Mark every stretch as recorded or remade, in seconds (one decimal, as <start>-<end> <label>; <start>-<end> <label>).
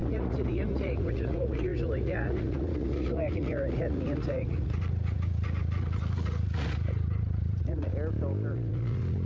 0.0-7.9 remade; 7.9-8.5 recorded; 8.5-9.3 remade